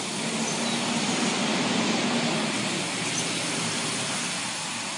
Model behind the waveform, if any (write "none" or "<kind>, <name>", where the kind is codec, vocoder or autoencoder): none